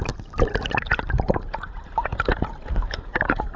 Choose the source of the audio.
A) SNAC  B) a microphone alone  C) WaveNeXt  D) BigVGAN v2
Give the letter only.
D